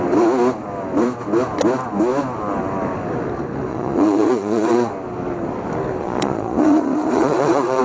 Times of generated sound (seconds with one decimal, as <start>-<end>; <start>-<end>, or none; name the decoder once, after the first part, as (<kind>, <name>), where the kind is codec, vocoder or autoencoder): 3.7-4.9 (vocoder, Vocos); 6.0-7.8